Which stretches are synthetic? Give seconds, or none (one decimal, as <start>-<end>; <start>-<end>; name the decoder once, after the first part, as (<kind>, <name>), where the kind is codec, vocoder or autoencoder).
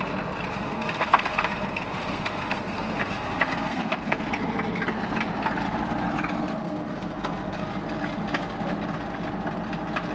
0.5-4.3 (codec, SNAC); 6.6-7.7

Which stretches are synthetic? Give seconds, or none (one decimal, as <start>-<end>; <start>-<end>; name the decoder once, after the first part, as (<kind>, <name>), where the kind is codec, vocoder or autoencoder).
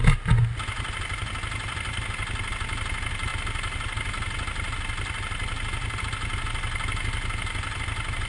none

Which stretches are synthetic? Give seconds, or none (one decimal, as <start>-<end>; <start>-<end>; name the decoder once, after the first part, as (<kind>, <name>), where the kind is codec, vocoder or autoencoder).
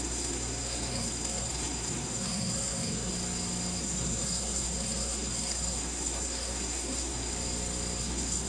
0.0-3.1 (codec, SNAC); 3.8-7.3; 8.0-8.5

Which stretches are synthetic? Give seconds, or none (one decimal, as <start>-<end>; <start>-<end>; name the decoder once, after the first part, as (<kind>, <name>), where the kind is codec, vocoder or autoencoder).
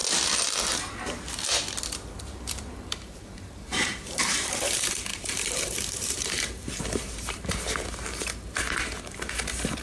2.1-9.8 (vocoder, BigVGAN v2)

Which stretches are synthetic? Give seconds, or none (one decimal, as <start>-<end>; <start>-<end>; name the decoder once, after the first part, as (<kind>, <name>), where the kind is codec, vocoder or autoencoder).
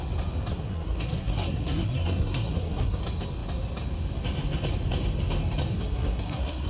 0.5-3.0 (codec, SNAC); 5.7-6.7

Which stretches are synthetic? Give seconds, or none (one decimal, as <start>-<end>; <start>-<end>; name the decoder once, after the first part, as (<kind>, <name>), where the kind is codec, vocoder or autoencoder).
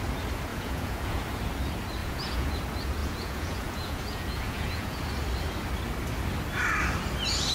0.5-1.2 (vocoder, Vocos); 2.0-2.5; 3.0-5.0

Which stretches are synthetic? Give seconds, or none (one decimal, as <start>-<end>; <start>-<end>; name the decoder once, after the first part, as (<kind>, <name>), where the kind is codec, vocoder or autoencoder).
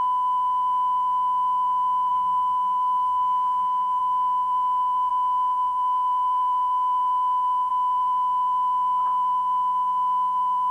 2.1-4.0 (codec, SNAC)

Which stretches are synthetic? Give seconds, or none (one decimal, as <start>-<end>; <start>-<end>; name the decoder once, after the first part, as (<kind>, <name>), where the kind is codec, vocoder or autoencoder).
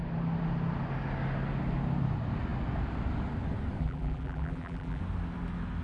3.8-5.0 (vocoder, BigVGAN v2)